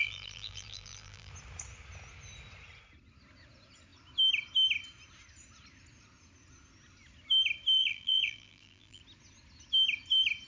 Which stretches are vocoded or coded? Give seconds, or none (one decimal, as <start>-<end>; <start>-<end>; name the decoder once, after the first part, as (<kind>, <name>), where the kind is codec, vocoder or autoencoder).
0.0-1.3 (vocoder, BigVGAN v2); 7.8-9.0